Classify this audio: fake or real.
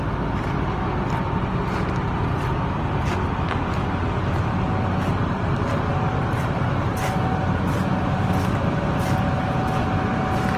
real